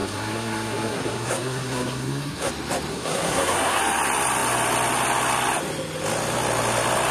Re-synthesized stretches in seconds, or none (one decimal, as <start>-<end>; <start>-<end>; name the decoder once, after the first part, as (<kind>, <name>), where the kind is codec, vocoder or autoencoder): 0.0-2.5 (codec, SNAC); 2.9-3.8